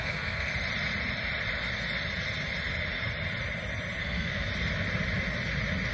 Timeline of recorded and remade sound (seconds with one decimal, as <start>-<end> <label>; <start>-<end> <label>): 0.0-0.5 remade; 0.5-4.0 recorded; 4.0-4.5 remade; 4.5-5.9 recorded